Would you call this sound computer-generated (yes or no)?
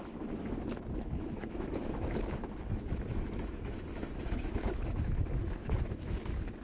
yes